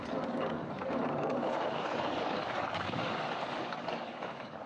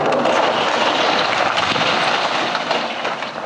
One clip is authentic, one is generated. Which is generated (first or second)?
first